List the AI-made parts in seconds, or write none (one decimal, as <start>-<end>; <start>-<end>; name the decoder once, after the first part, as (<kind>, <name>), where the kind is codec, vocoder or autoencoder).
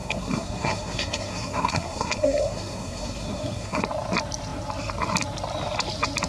0.0-3.8 (codec, SNAC)